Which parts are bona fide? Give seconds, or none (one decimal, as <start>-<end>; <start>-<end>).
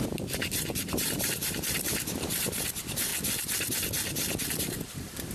3.1-4.4